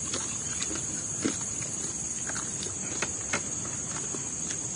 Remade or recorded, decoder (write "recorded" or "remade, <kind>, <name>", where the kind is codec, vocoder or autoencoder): recorded